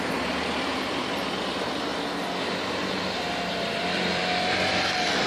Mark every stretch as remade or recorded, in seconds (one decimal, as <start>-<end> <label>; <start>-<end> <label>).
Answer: 0.0-1.9 remade; 1.9-2.7 recorded; 2.7-4.2 remade; 4.2-5.3 recorded